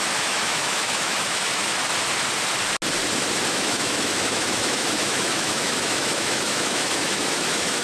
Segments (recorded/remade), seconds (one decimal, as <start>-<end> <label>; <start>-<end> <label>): 0.0-1.6 remade; 1.6-3.5 recorded; 3.5-7.8 remade